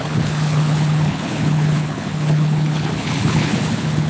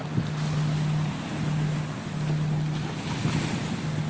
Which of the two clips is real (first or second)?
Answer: second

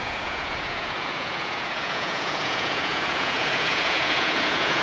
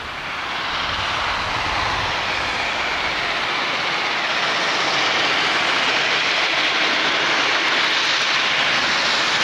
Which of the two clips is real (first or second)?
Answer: second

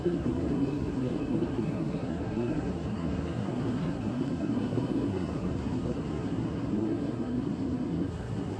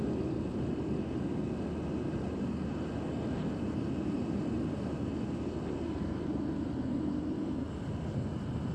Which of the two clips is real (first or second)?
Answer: second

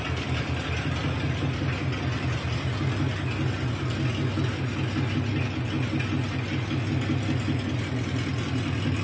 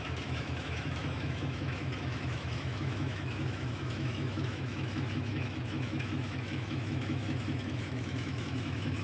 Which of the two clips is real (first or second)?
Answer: first